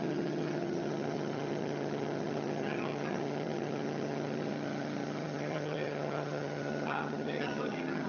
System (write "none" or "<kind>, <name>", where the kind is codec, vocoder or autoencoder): vocoder, HiFi-GAN